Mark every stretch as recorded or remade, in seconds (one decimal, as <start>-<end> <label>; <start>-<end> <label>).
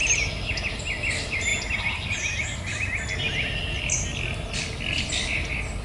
0.0-5.8 recorded